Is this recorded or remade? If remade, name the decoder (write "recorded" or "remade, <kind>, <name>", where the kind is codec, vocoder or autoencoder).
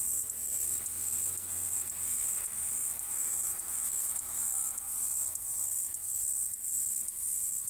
remade, codec, SNAC